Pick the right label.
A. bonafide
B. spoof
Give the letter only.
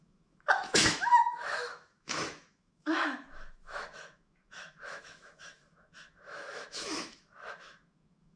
B